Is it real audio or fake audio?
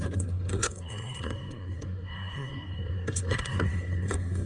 fake